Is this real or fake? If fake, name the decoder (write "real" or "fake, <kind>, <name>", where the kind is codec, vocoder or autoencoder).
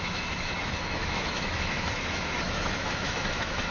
fake, autoencoder, DAC-VAE